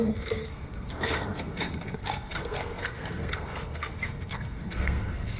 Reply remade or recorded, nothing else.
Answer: remade